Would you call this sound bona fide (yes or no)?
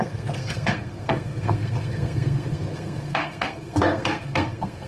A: no